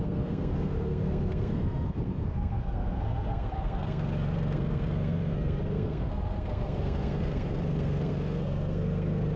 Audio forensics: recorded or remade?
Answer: remade